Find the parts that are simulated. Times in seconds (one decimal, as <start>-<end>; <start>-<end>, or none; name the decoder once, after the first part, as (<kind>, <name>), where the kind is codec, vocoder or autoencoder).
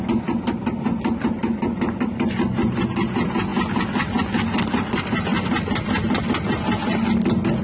none